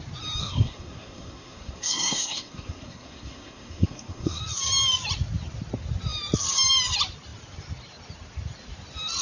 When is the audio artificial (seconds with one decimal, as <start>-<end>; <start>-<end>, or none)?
0.4-4.4